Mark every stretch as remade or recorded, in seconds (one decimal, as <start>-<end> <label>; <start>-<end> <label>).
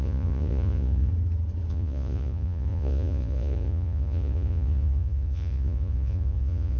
0.0-1.1 remade; 1.1-1.7 recorded; 1.7-6.8 remade